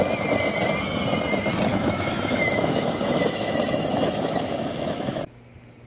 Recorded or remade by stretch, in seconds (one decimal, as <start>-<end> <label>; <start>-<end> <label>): 0.0-1.7 recorded; 1.7-5.2 remade; 5.2-5.9 recorded